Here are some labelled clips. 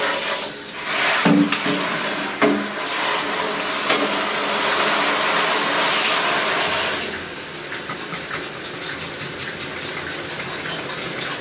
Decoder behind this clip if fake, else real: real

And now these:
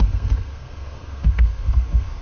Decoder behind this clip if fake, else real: fake, codec, SNAC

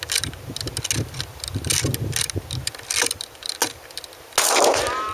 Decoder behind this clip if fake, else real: real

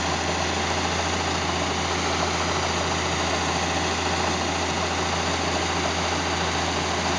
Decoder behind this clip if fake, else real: real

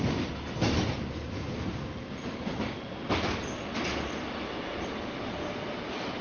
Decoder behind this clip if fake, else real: real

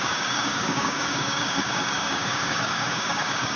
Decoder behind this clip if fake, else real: fake, codec, DAC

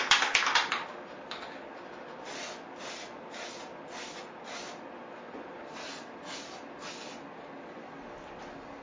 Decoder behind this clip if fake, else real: real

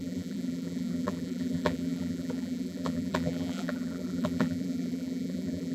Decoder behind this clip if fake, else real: fake, vocoder, BigVGAN v2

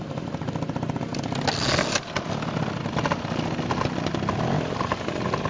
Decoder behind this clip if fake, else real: real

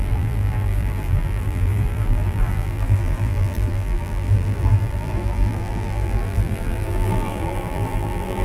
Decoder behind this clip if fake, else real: fake, vocoder, BigVGAN v2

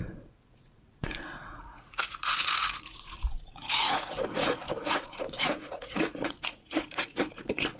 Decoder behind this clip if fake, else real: fake, vocoder, Vocos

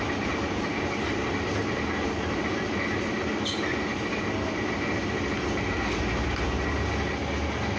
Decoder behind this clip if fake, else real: real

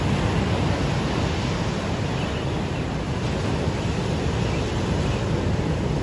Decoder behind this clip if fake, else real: real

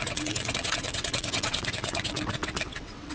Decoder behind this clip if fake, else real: fake, vocoder, WaveNeXt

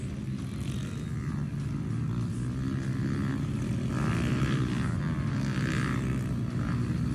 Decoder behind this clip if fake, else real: real